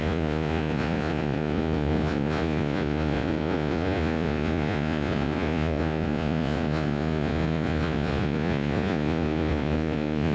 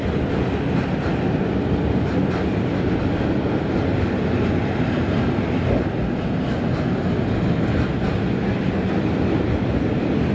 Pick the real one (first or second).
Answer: second